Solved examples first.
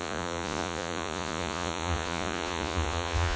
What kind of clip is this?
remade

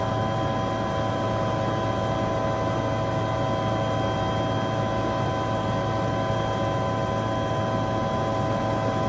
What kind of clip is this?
recorded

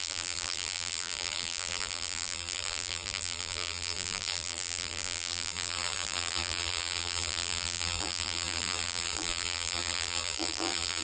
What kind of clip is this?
remade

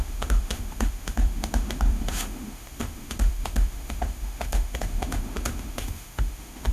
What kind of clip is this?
remade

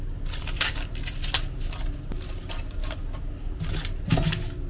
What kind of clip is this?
recorded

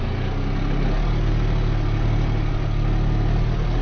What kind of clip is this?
recorded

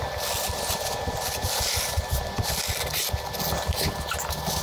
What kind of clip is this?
recorded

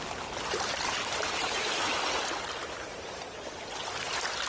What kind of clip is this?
recorded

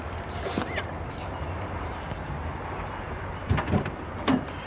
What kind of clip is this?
remade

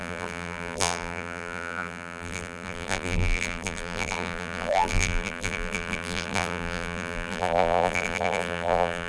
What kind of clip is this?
remade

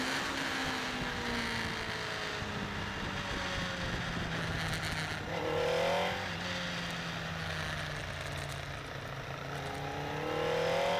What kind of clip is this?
recorded